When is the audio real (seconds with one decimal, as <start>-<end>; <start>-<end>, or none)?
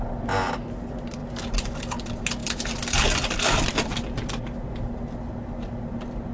0.0-2.4; 4.7-6.3